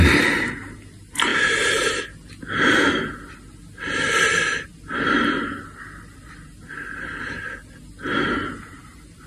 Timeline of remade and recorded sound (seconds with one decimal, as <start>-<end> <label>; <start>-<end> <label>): 0.0-1.3 recorded; 1.3-2.0 remade; 2.0-9.3 recorded